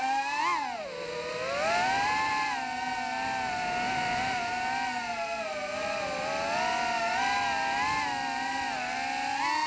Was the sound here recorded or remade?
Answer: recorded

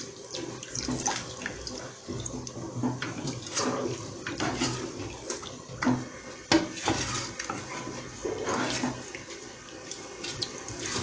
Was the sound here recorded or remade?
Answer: recorded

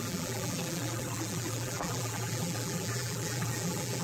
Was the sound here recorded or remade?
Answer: remade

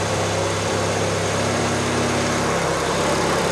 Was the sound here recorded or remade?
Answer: remade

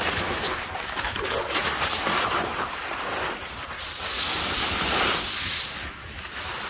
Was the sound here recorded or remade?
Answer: recorded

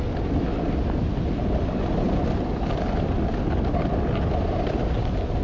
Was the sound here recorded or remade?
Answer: recorded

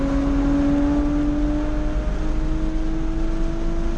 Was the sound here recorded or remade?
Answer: recorded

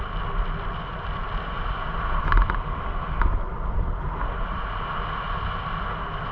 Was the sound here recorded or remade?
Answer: recorded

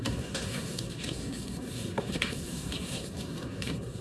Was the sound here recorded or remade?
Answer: remade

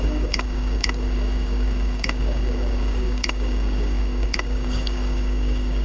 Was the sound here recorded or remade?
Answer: remade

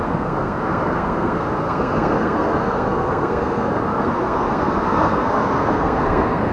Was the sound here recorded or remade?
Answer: remade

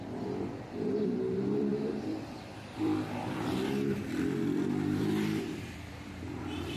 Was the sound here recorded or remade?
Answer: remade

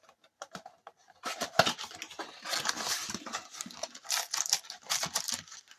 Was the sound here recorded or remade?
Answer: recorded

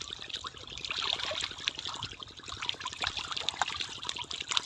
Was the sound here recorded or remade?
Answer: recorded